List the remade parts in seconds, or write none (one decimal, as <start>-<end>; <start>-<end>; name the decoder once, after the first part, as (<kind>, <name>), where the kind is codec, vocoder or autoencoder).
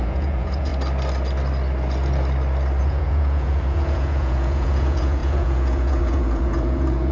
0.0-0.7 (vocoder, Vocos); 2.8-7.1